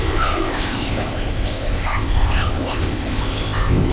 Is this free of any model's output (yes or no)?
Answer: no